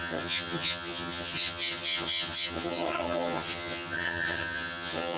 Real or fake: fake